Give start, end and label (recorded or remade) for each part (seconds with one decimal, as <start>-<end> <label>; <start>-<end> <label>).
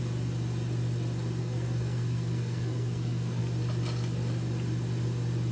0.0-1.4 recorded; 1.4-3.4 remade; 3.4-5.5 recorded